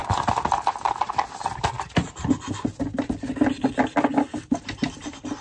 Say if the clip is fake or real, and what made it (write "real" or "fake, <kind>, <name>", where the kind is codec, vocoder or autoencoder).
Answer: real